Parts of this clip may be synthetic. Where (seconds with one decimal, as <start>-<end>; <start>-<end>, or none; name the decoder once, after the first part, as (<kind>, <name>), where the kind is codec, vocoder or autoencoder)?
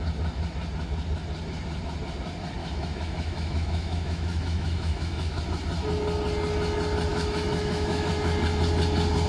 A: 2.6-5.4 (autoencoder, DAC-VAE); 7.1-8.1